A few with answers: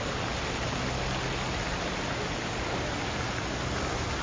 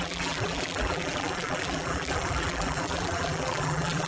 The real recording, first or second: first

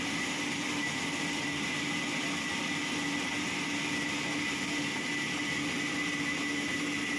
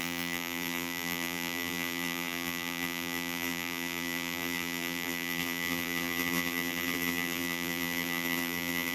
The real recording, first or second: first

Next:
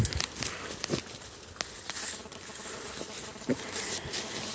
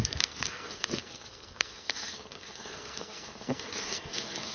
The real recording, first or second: first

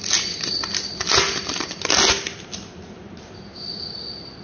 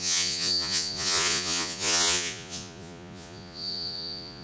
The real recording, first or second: first